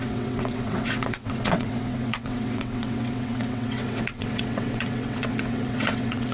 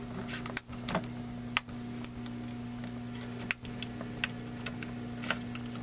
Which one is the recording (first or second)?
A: second